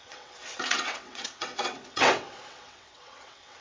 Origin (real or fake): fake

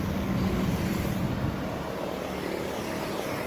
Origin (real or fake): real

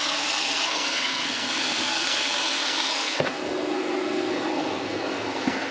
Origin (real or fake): fake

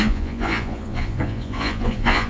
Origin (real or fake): fake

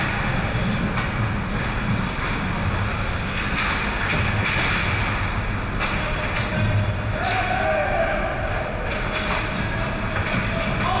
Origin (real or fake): real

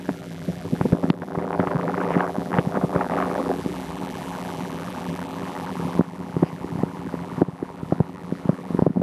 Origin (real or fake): fake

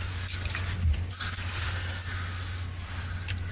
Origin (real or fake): real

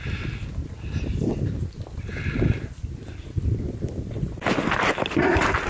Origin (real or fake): real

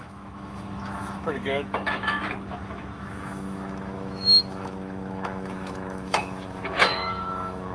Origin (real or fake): fake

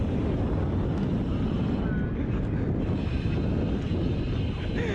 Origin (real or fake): real